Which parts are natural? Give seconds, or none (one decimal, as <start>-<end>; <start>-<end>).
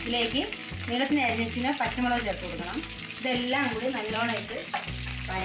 0.6-2.3; 4.6-5.4